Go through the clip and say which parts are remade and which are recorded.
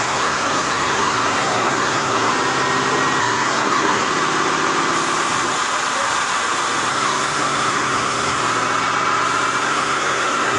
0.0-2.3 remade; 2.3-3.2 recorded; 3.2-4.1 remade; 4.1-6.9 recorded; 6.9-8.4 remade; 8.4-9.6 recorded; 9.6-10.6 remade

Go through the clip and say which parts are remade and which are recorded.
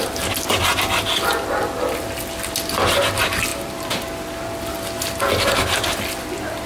0.0-6.7 recorded